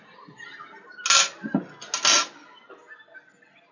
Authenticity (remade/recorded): recorded